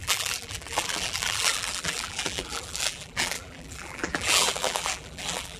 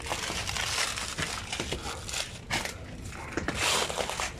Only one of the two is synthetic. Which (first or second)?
first